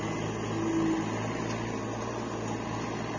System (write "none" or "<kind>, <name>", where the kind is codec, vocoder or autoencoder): none